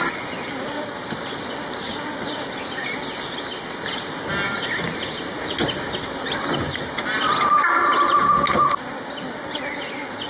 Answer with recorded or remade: recorded